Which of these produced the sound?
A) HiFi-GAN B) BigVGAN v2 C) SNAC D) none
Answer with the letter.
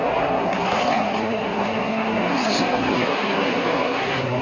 C